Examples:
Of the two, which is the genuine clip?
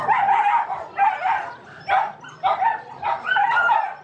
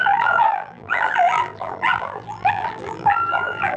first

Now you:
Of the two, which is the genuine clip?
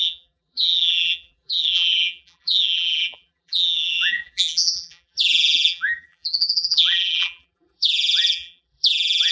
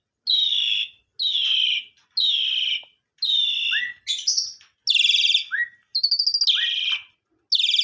second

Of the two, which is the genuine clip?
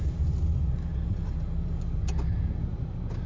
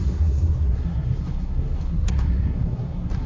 first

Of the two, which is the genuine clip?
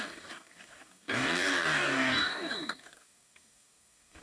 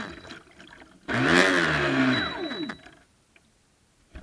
second